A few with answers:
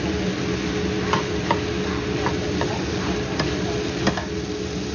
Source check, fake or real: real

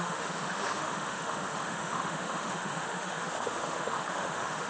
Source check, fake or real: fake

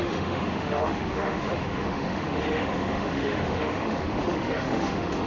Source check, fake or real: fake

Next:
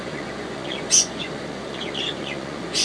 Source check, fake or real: fake